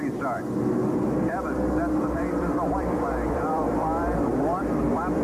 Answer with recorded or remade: remade